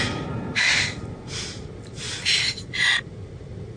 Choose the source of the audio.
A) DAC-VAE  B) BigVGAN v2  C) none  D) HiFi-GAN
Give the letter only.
B